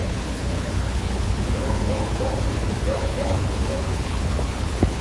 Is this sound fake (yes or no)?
yes